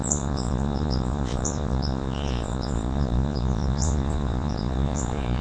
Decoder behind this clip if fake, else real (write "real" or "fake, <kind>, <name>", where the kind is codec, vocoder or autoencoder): fake, vocoder, Vocos